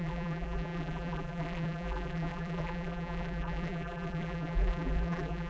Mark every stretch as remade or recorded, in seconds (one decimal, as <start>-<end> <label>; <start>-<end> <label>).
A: 0.0-5.5 remade